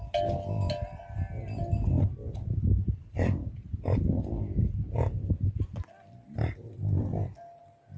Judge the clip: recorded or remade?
recorded